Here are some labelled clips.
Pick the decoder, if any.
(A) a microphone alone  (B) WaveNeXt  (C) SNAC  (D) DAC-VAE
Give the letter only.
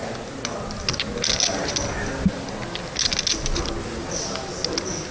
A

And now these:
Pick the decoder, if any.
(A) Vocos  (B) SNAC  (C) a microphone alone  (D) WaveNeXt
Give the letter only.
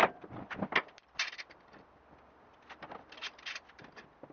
C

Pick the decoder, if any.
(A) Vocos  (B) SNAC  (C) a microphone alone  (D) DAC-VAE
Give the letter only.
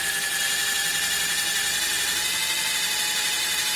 C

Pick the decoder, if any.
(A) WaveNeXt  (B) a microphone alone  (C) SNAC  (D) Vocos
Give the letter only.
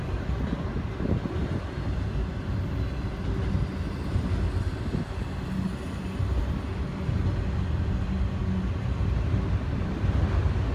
B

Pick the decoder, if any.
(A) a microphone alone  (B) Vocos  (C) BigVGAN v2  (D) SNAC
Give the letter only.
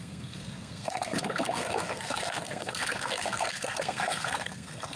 D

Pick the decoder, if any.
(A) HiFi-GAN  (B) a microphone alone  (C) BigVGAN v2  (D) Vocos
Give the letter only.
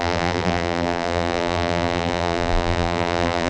C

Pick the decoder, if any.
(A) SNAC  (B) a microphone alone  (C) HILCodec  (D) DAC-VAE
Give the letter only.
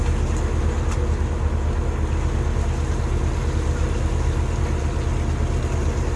B